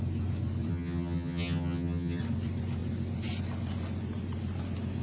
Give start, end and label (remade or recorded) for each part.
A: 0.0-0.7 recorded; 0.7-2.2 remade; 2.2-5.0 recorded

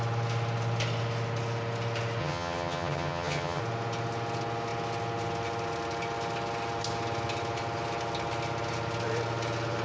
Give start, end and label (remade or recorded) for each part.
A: 0.0-2.2 recorded; 2.2-3.6 remade; 3.6-9.8 recorded